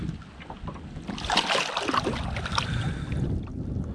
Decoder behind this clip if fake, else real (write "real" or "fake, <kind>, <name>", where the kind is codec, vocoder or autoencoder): real